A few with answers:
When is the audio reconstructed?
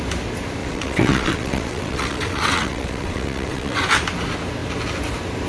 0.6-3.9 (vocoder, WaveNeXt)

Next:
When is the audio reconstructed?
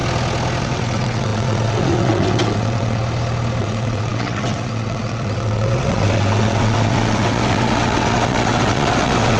0.6-3.0 (vocoder, WaveNeXt); 3.6-9.4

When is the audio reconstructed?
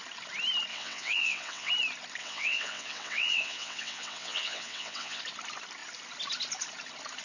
0.7-1.7 (vocoder, WaveNeXt); 2.2-5.2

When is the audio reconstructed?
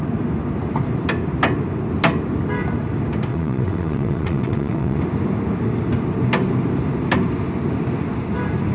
3.3-5.0 (vocoder, WaveNeXt)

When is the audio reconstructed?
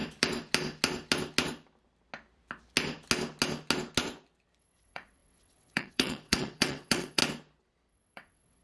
4.6-7.2 (vocoder, WaveNeXt); 7.9-8.6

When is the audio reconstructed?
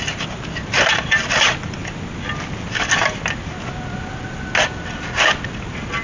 none